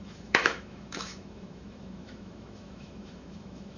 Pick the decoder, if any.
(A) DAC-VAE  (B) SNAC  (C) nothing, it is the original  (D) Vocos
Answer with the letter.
A